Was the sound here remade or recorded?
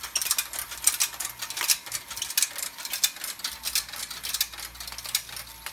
recorded